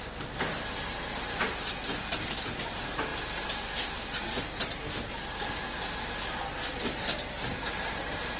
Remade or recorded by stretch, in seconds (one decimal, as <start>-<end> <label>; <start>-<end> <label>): 0.0-8.4 recorded